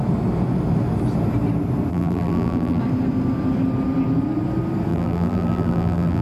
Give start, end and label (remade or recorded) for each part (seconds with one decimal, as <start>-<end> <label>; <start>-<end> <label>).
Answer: 0.0-1.9 recorded; 1.9-2.8 remade; 2.8-4.9 recorded; 4.9-6.2 remade